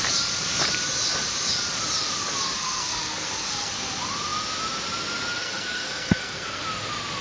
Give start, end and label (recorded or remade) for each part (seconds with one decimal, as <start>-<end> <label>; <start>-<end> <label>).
0.0-2.6 recorded; 2.6-3.7 remade; 3.7-5.4 recorded; 5.4-6.6 remade; 6.6-7.2 recorded